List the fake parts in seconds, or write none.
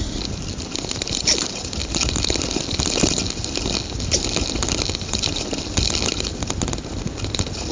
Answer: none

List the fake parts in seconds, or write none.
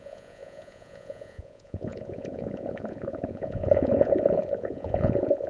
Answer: 0.0-5.5 (vocoder, Vocos)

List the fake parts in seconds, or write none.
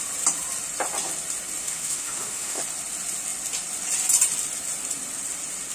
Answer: 1.6-2.6 (autoencoder, DAC-VAE)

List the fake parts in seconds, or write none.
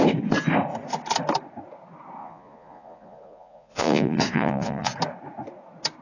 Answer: 2.2-4.9 (vocoder, Vocos)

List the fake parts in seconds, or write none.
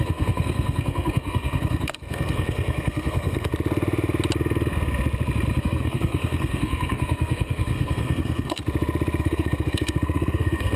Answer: 0.0-3.5 (codec, SNAC); 5.6-8.6; 9.2-10.8